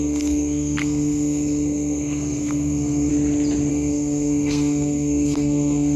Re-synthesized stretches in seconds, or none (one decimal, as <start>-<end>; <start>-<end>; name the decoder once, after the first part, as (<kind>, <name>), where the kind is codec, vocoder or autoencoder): 0.0-3.1 (codec, SNAC); 3.7-6.0